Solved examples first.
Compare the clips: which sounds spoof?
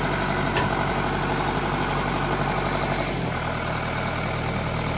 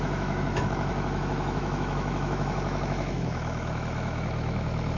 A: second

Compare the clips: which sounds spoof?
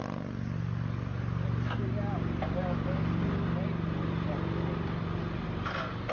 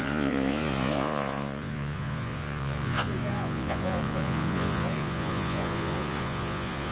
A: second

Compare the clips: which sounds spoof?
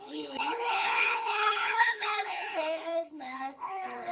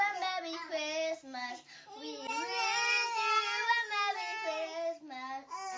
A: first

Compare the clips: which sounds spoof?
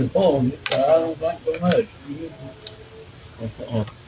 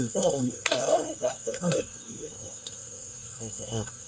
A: second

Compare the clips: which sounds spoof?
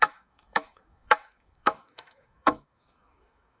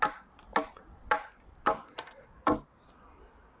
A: first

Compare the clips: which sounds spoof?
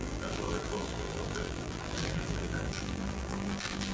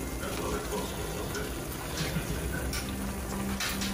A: first